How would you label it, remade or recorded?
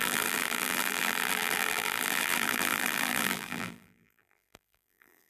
remade